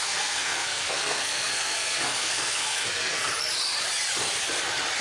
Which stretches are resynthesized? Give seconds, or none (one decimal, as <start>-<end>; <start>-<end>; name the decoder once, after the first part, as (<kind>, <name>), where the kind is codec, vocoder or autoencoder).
0.0-3.3 (codec, SNAC)